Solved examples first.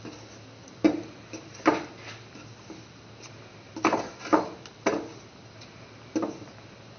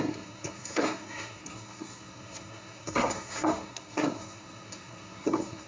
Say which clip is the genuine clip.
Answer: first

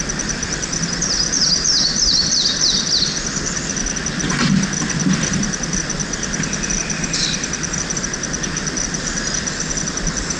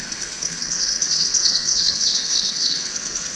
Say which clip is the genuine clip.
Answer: first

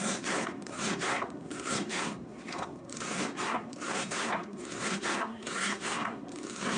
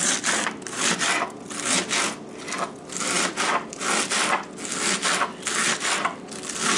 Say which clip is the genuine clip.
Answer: second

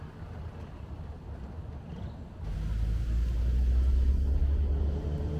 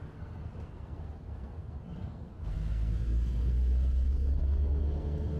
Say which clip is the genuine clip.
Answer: first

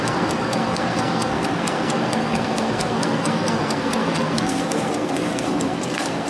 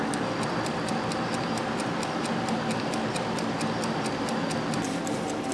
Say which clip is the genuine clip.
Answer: second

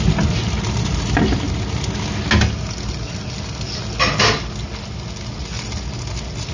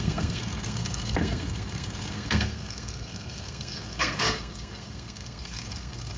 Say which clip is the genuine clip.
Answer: first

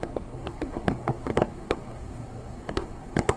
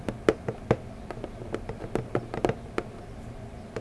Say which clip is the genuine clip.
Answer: second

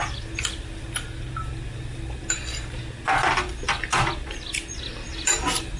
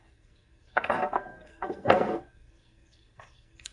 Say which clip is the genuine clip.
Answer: first